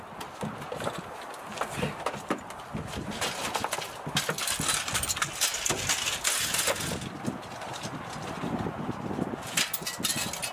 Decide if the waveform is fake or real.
real